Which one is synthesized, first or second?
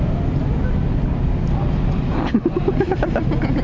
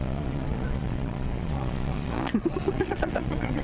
second